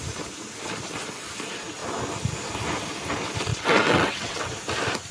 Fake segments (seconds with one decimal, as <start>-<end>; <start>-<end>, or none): 3.5-4.5